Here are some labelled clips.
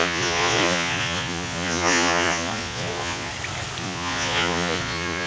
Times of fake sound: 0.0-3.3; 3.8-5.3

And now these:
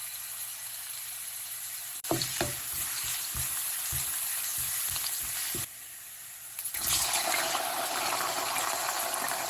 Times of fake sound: 0.9-3.4; 5.4-8.4

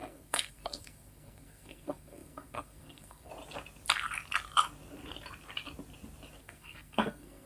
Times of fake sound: 0.0-3.3; 6.4-7.5

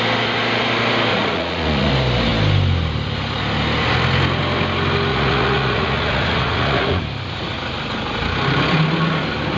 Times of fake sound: 1.1-1.9; 5.1-7.0

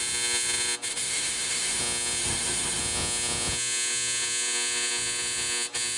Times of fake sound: 0.9-1.8; 2.2-2.8

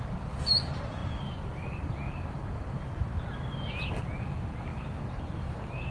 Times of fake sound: 1.0-2.8

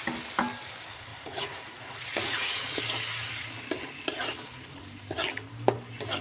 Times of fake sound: 1.1-2.8

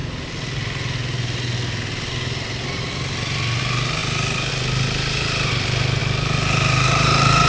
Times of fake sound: 6.0-7.5